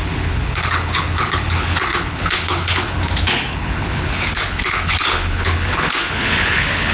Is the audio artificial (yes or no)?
yes